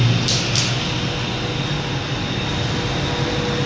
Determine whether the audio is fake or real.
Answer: real